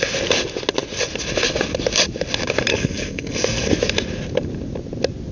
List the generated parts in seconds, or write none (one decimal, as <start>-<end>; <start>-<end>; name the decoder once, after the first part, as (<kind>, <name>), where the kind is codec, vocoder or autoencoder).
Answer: 2.7-3.7 (codec, SNAC)